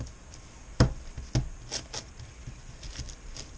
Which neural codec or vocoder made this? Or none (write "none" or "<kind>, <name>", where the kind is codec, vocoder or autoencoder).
none